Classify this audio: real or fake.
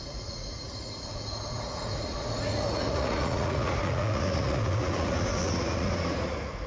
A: fake